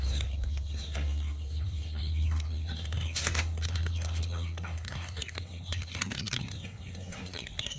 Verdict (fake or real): fake